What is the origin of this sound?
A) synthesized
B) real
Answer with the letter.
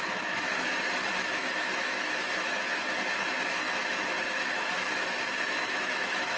A